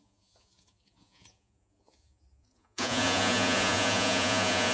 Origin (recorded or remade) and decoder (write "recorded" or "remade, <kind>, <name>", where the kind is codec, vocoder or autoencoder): remade, vocoder, Vocos